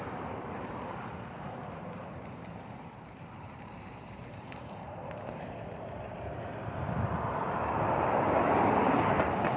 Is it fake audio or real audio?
fake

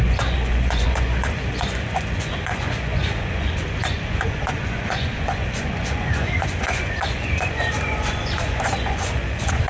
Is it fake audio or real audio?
fake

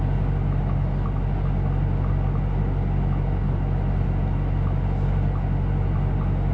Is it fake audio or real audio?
real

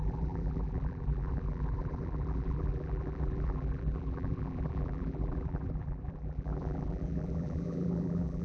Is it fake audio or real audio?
fake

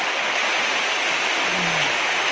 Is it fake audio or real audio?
real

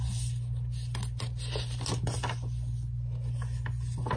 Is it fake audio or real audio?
real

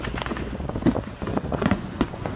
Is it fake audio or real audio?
fake